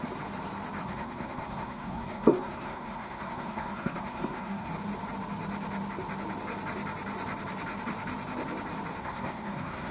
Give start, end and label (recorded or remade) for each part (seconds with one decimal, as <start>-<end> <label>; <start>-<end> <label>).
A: 0.0-0.8 recorded; 0.8-4.7 remade; 4.7-9.0 recorded; 9.0-9.9 remade